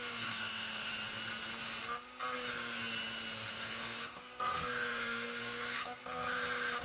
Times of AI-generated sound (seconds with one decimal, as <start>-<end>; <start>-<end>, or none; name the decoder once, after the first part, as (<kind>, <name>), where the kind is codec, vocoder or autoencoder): 0.0-0.9 (codec, SNAC); 3.5-6.0